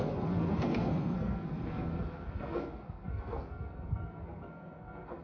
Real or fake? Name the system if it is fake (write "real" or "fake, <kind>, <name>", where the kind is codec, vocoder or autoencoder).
fake, codec, SNAC